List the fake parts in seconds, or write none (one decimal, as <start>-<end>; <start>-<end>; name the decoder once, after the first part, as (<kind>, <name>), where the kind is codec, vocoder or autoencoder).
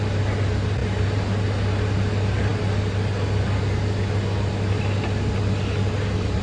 none